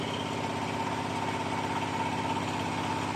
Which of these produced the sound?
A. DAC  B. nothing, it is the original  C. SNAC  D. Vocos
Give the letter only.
B